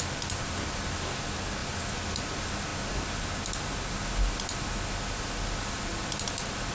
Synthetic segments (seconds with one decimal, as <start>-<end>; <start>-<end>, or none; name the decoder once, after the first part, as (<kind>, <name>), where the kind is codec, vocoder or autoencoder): none